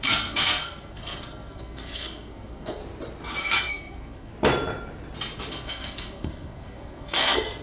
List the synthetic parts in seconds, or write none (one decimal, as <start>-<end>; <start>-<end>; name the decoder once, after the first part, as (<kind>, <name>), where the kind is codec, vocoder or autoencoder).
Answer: 0.0-2.8 (codec, SNAC); 3.4-4.3; 5.5-7.6